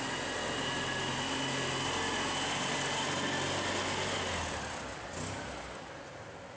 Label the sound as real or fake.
real